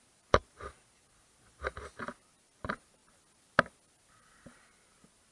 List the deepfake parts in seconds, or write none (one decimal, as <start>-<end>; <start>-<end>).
none